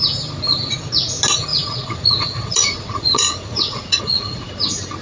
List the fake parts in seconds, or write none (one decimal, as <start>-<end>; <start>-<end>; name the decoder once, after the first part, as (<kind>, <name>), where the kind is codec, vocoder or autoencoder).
1.5-4.5 (vocoder, Vocos)